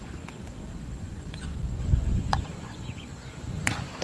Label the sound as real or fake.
fake